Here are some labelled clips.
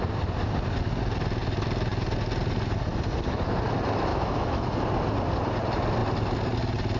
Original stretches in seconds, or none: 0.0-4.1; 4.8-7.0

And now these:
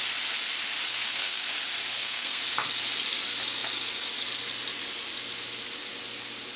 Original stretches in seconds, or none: 0.0-0.9; 1.4-1.9; 2.4-6.6

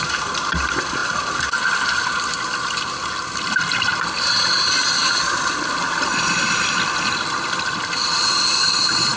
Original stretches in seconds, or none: 0.0-9.2

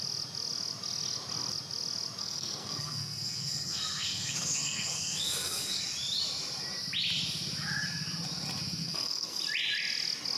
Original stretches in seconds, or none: 0.0-2.2; 5.8-8.8; 9.4-10.4

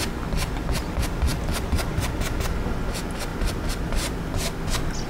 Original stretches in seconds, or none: 0.0-3.3; 4.2-5.1

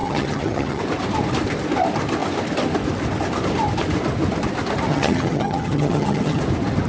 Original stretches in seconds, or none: 0.8-4.9; 6.4-6.9

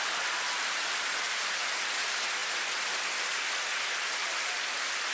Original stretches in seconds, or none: 0.0-5.1